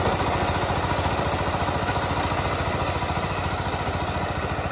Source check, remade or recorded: recorded